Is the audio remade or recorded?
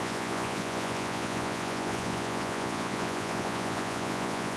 remade